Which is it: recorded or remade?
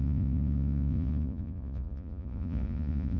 remade